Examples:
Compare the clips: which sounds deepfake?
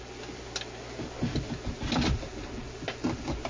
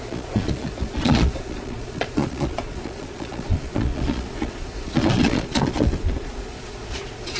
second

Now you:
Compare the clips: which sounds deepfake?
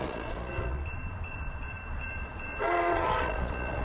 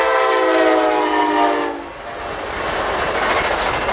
first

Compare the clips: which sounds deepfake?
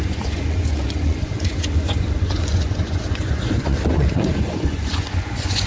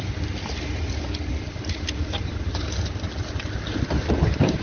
first